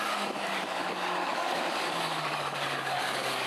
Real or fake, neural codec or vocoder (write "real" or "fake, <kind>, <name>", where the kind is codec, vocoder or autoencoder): fake, codec, DAC